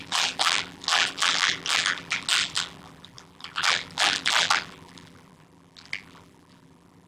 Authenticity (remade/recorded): remade